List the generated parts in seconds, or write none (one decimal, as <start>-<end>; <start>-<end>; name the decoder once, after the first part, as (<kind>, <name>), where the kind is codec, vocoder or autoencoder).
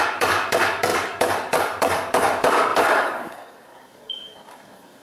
0.0-5.0 (codec, DAC)